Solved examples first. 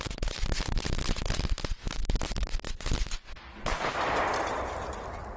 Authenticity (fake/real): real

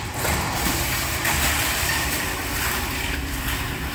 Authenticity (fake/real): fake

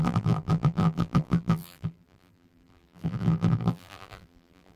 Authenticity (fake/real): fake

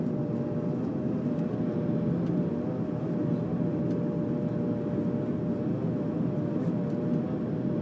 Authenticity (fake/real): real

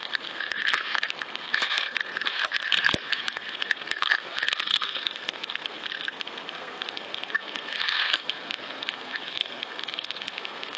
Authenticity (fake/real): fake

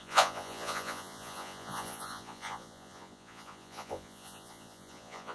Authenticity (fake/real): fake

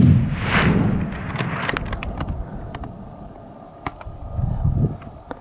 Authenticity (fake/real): real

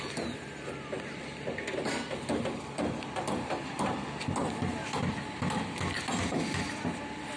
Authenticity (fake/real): real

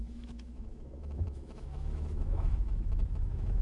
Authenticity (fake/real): fake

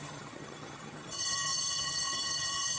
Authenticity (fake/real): fake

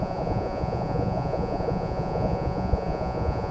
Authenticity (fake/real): fake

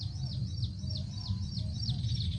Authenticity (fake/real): real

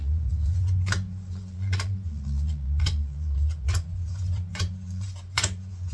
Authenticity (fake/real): fake